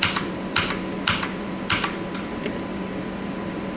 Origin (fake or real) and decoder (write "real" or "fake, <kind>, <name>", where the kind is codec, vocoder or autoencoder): fake, vocoder, BigVGAN v2